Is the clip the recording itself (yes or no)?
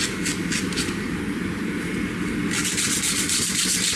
yes